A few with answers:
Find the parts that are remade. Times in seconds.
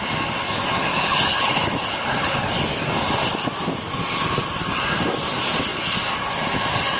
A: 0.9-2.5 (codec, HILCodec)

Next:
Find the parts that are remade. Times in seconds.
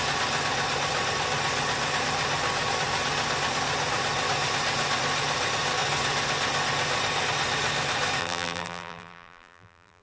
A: 8.2-10.0 (vocoder, BigVGAN v2)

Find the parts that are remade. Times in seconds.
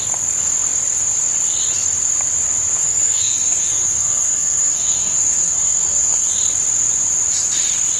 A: 2.8-6.4 (codec, SNAC)